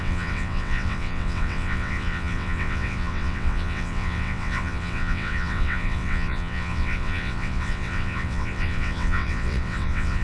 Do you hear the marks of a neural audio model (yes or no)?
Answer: yes